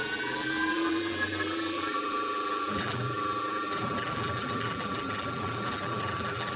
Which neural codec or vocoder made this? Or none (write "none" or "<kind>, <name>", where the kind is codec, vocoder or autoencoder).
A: vocoder, BigVGAN v2